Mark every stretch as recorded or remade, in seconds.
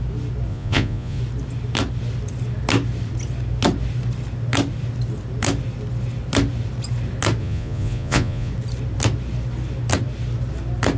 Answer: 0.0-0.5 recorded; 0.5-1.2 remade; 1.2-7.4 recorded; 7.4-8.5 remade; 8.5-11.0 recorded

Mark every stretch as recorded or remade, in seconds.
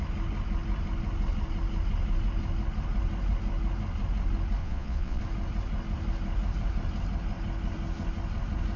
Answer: 0.0-4.6 recorded; 4.6-5.2 remade; 5.2-8.8 recorded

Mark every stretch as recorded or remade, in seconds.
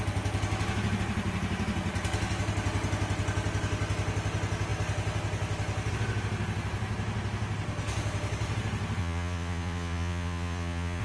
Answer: 0.0-9.0 recorded; 9.0-11.0 remade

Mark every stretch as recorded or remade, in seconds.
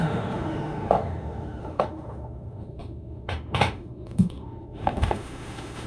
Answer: 0.0-5.9 remade